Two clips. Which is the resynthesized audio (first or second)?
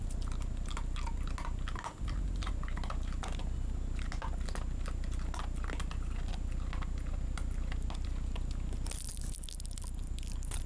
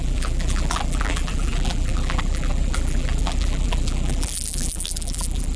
second